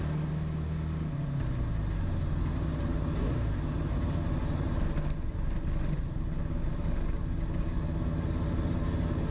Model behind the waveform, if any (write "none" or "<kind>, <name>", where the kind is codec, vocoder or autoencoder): none